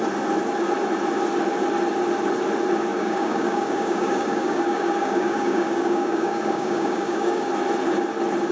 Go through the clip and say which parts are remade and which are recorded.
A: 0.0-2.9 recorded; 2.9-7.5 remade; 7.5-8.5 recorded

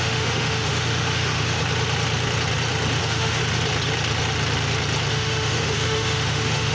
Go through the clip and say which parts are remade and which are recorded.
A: 0.0-1.6 remade; 1.6-3.0 recorded; 3.0-3.4 remade; 3.4-5.1 recorded; 5.1-6.7 remade